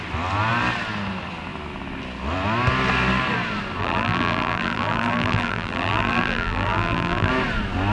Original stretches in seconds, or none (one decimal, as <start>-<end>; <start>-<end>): 0.0-3.8; 7.3-7.9